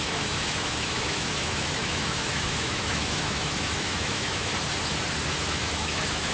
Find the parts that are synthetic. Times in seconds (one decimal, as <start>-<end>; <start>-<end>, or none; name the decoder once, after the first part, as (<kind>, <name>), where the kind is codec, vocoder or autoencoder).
0.0-4.5 (autoencoder, DAC-VAE); 5.5-6.3